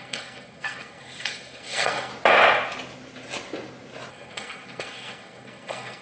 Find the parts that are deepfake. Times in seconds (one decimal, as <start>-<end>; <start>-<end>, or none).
0.0-2.1; 4.1-6.0